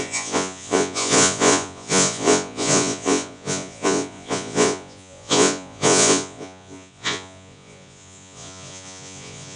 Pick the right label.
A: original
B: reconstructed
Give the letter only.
B